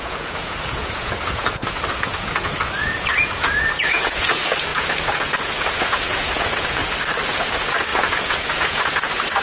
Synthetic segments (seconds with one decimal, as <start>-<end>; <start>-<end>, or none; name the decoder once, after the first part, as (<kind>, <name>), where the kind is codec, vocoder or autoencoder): 0.0-6.8 (vocoder, Vocos); 7.3-9.4

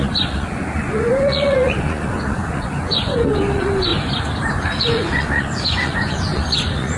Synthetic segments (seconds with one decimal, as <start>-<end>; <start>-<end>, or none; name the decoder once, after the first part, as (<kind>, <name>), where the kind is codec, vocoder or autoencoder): 0.0-3.9 (vocoder, Vocos); 4.8-7.0

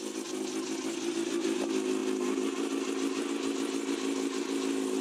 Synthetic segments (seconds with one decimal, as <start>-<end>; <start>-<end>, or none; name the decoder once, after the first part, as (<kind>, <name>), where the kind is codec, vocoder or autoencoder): none